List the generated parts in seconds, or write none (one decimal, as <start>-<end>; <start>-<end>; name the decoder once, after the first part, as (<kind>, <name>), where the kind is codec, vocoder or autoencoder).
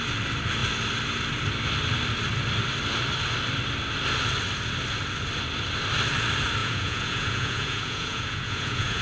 6.6-9.0 (vocoder, Vocos)